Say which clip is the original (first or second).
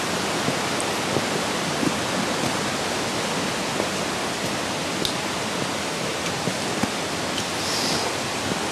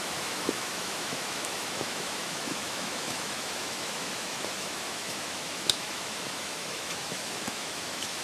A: first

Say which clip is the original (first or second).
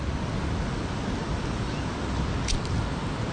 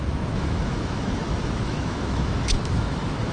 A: first